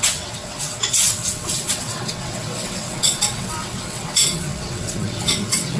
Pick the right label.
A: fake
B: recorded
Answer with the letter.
A